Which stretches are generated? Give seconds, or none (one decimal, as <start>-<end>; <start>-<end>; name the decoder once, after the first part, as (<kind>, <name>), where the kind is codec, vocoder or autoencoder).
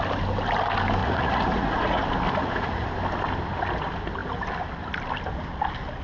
1.0-2.0 (vocoder, Vocos); 2.4-2.9